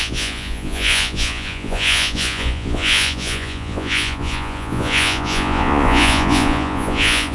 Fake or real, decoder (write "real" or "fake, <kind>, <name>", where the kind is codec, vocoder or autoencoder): fake, vocoder, Vocos